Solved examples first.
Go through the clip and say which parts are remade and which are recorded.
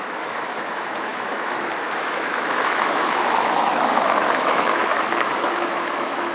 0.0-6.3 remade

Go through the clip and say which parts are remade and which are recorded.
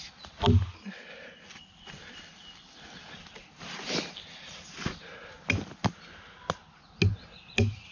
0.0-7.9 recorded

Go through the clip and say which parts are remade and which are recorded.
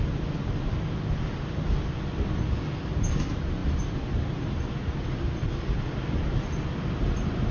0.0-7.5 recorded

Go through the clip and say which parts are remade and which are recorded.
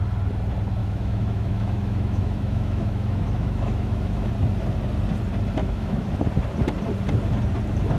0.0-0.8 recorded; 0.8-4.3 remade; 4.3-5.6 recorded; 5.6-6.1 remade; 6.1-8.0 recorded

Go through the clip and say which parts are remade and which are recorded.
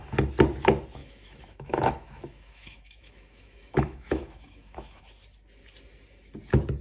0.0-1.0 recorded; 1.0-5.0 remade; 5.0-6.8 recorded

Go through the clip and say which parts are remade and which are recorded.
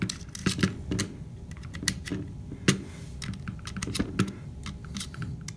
0.0-5.6 recorded